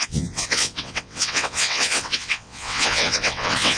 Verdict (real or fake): fake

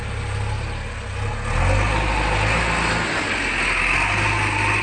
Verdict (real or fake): real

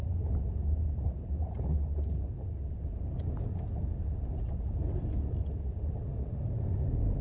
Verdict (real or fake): real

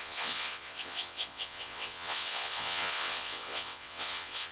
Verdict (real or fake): fake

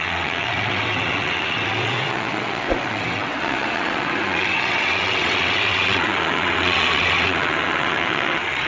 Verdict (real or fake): fake